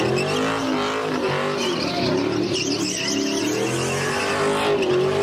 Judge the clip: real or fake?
real